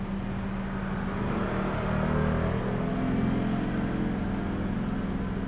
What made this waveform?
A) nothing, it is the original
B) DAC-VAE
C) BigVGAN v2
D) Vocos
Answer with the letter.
A